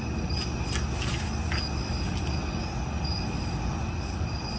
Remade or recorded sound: recorded